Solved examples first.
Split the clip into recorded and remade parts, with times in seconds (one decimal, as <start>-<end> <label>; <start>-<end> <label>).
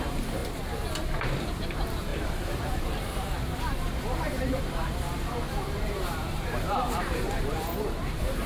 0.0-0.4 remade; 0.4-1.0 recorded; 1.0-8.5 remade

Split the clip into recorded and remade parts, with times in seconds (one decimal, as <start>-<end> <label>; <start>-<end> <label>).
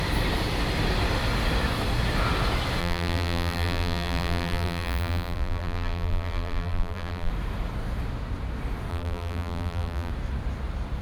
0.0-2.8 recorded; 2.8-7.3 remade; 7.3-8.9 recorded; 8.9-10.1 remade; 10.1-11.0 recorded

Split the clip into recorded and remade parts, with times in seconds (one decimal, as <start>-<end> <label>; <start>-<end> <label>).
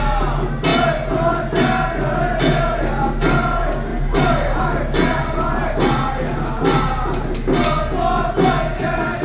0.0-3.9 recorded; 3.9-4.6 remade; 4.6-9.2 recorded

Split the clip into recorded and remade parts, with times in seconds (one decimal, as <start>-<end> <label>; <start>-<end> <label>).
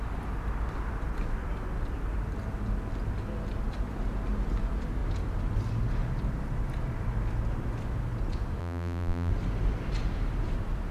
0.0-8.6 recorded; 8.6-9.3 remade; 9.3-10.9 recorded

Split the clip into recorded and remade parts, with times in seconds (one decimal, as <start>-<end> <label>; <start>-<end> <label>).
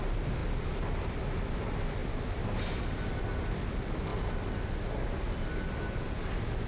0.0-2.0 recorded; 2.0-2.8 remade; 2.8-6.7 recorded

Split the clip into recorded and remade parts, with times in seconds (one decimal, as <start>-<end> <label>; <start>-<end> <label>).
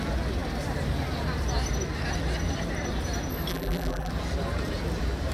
0.0-3.5 recorded; 3.5-4.1 remade; 4.1-5.3 recorded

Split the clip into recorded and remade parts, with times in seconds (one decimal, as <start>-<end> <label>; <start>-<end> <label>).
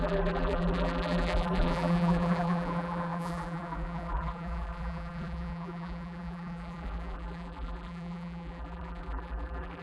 0.0-9.8 remade